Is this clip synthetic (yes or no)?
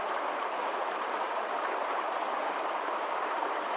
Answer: yes